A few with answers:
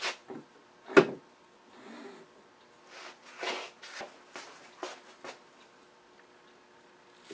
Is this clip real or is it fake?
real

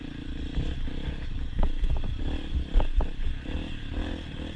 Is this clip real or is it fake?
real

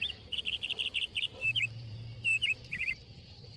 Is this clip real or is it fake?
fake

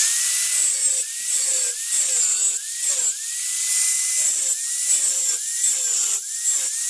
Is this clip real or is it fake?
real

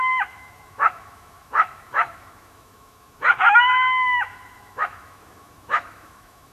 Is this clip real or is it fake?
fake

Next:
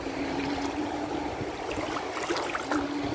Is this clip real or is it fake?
real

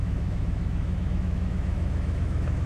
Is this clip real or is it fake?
fake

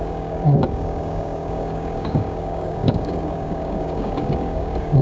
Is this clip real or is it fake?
fake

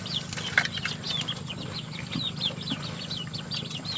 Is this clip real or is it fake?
real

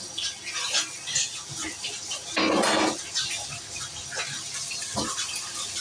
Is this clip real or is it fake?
real